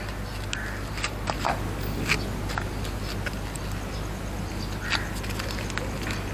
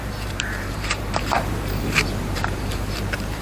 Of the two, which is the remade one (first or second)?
second